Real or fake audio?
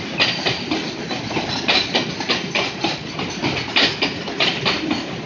real